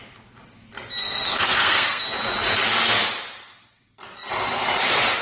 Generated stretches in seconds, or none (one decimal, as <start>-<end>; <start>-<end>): 1.0-2.0